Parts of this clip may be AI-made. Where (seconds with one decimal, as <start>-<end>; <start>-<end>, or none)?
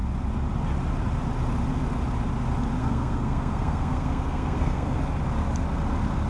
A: 2.8-5.0